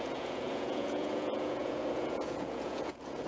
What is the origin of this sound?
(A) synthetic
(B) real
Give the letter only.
A